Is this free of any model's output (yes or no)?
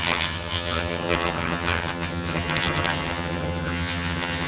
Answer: no